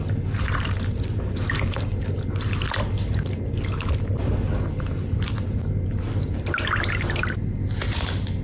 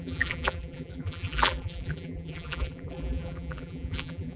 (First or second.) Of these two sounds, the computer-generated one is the second